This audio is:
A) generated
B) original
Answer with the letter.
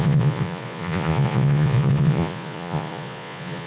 A